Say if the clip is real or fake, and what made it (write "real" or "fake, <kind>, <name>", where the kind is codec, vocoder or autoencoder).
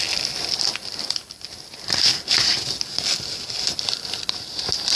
real